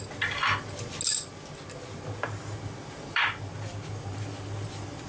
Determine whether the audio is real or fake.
real